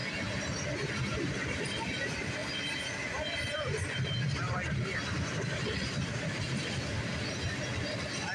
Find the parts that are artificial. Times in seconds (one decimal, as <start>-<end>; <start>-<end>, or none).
2.4-4.1